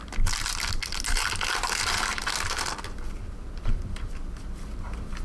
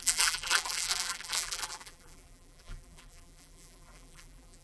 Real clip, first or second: first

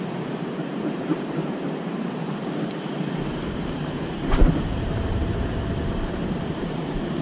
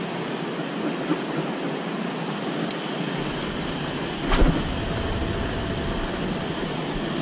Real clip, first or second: second